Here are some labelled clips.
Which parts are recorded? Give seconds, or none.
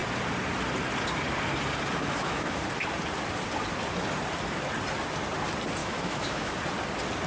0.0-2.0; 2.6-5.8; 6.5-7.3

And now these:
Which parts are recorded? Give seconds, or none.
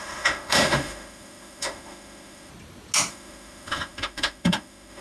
2.5-3.1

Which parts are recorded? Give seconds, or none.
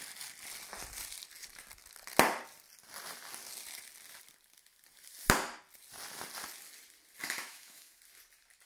0.0-7.2; 8.0-8.7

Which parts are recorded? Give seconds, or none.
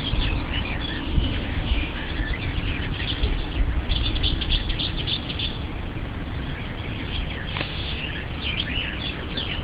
0.0-1.1; 2.1-7.5; 8.0-9.6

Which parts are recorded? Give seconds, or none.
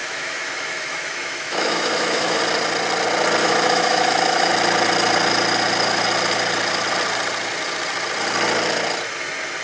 2.4-3.4; 4.5-9.6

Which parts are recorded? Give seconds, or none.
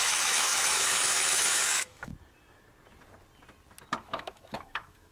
2.1-4.0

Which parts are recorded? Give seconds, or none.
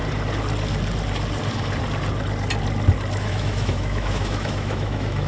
0.0-3.2